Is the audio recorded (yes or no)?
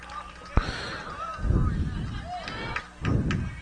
yes